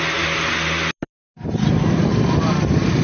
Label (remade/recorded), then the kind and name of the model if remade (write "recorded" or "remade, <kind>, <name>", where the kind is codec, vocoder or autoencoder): recorded